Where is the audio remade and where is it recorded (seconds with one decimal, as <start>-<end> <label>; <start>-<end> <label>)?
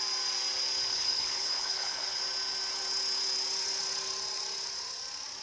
0.0-0.9 recorded; 0.9-2.2 remade; 2.2-5.4 recorded